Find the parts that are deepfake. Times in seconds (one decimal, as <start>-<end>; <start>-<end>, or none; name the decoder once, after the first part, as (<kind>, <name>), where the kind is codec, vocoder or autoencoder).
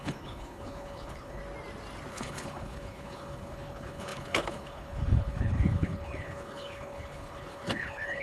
0.0-1.4 (codec, HILCodec); 2.1-8.2